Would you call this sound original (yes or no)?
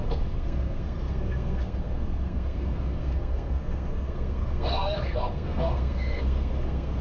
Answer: no